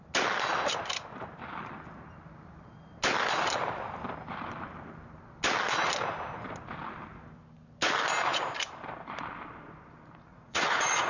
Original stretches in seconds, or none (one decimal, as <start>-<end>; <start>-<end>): 0.0-10.3